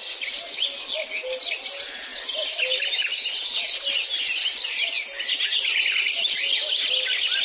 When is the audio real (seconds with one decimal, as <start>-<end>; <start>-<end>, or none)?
0.0-7.4